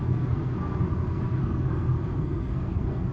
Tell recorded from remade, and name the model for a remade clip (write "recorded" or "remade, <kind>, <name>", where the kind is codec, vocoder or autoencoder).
remade, codec, SNAC